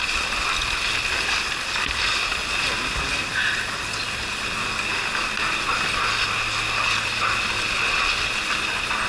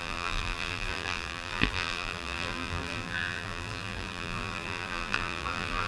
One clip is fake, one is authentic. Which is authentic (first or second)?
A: first